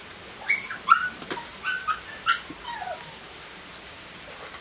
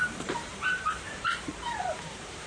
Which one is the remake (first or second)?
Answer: second